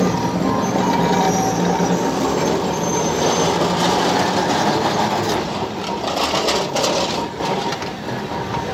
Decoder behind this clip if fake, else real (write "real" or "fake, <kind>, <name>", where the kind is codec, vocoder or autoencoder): real